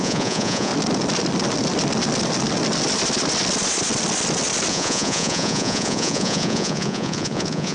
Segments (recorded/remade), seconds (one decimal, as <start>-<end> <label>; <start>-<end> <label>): 0.0-0.7 remade; 0.7-4.7 recorded; 4.7-7.7 remade

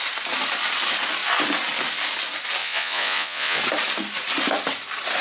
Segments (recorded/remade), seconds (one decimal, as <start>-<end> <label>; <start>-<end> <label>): 0.0-2.6 recorded; 2.6-3.6 remade; 3.6-5.2 recorded

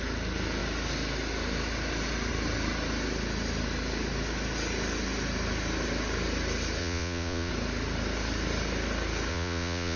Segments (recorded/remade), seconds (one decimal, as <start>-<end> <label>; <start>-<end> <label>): 0.0-6.8 recorded; 6.8-7.5 remade; 7.5-9.3 recorded; 9.3-10.0 remade

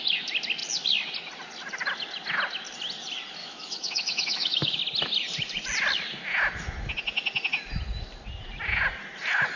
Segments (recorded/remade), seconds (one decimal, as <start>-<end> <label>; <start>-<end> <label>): 0.0-3.4 recorded; 3.4-4.8 remade; 4.8-9.6 recorded

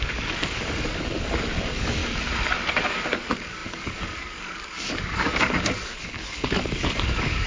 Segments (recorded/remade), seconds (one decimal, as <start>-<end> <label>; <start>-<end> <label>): 0.0-2.0 remade; 2.0-2.7 recorded; 2.7-7.5 remade

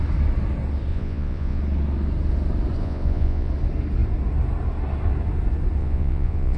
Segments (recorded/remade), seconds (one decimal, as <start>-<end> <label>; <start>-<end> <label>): 0.0-0.9 recorded; 0.9-1.6 remade; 1.6-2.8 recorded; 2.8-3.5 remade; 3.5-5.8 recorded; 5.8-6.6 remade